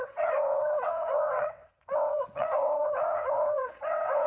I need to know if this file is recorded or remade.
remade